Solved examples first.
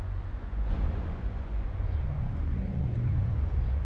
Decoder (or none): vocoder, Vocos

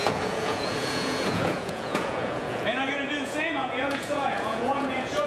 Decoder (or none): vocoder, Vocos